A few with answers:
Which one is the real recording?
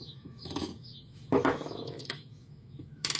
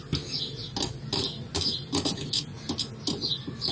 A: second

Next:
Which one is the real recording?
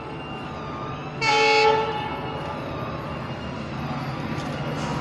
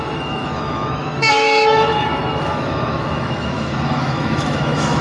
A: first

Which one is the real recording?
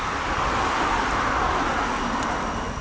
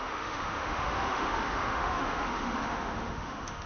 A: first